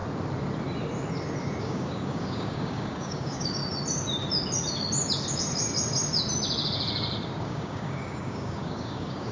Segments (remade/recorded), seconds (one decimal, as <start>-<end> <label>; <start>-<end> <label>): 0.0-1.6 recorded; 1.6-3.6 remade; 3.6-7.4 recorded; 7.4-9.3 remade